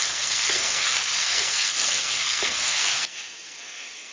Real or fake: fake